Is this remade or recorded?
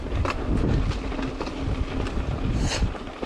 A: recorded